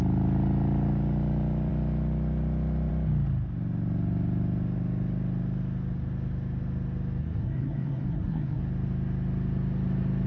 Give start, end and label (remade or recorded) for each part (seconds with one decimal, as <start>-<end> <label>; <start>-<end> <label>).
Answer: 0.0-7.2 recorded; 7.2-8.6 remade; 8.6-10.3 recorded

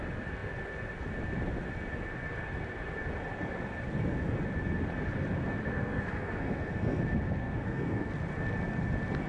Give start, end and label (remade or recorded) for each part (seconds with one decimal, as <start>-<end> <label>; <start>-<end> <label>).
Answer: 0.0-5.7 recorded; 5.7-7.0 remade; 7.0-7.4 recorded; 7.4-8.1 remade; 8.1-9.3 recorded

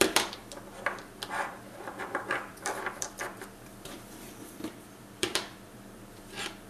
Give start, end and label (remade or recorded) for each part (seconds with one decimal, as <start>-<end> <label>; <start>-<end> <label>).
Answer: 0.0-0.4 remade; 0.4-1.0 recorded; 1.0-6.7 remade

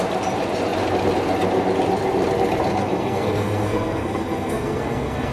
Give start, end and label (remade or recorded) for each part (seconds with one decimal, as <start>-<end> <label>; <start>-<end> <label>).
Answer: 0.0-2.8 recorded; 2.8-5.3 remade

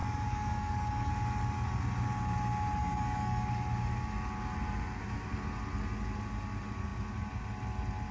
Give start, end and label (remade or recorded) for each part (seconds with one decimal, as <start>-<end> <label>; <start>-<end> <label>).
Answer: 0.0-1.1 remade; 1.1-2.8 recorded; 2.8-3.5 remade; 3.5-8.1 recorded